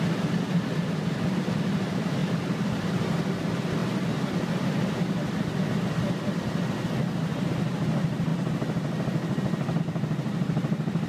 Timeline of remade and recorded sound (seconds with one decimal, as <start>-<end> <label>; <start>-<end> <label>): 0.0-11.1 recorded